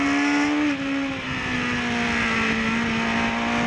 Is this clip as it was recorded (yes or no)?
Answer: yes